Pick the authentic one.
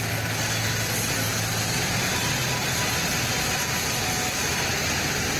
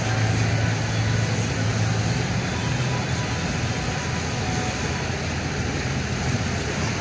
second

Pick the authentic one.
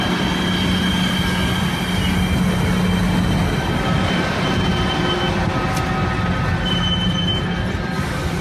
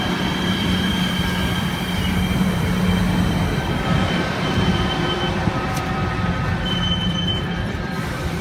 first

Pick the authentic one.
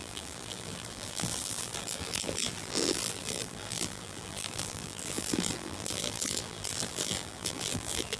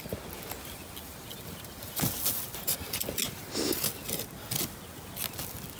second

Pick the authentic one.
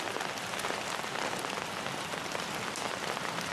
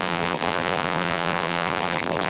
first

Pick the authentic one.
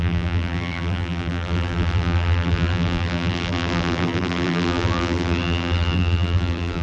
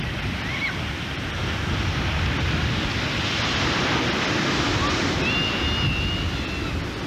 second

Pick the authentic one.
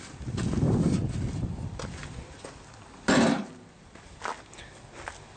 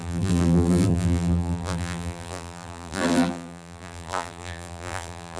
first